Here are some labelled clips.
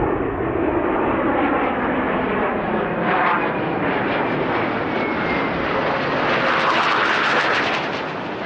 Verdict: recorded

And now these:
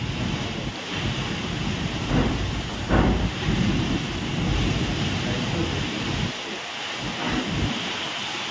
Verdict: recorded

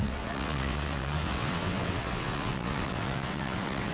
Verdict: remade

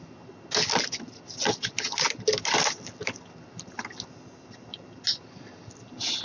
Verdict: recorded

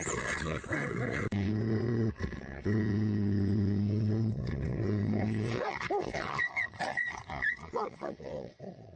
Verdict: remade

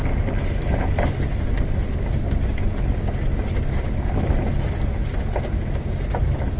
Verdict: recorded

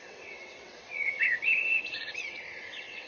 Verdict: remade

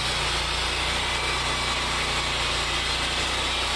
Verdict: recorded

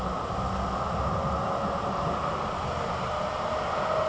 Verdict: recorded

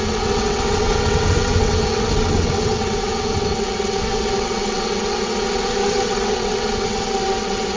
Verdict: remade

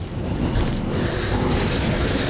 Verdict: recorded